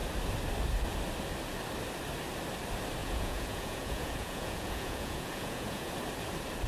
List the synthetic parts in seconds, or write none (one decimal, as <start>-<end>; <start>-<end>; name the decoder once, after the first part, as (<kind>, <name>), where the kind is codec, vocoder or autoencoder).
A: 3.0-5.9 (vocoder, Vocos)